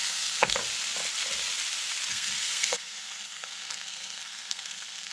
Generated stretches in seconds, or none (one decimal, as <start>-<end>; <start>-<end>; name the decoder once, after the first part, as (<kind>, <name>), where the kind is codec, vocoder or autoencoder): 0.0-0.6 (codec, SNAC); 2.1-5.1